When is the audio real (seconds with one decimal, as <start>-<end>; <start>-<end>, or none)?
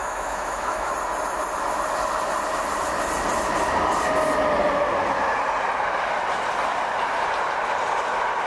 0.9-8.5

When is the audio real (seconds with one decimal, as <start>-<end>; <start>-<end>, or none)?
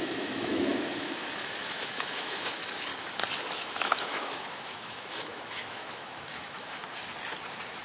2.9-3.5; 6.8-7.8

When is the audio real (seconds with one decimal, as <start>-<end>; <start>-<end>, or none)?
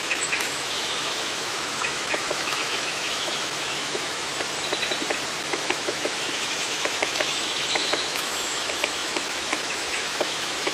4.3-5.5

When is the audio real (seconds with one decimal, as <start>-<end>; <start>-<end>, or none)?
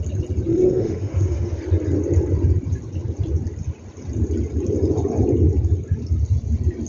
0.0-0.5; 1.6-6.9